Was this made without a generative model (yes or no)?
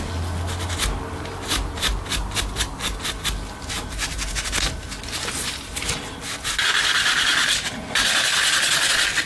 yes